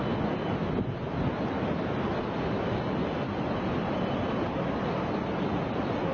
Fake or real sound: real